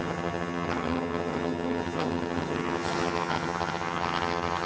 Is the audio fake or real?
fake